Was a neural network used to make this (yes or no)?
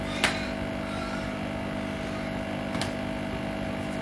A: no